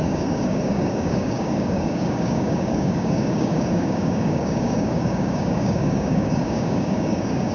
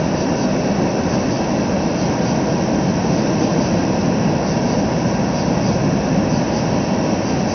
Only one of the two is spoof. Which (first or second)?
first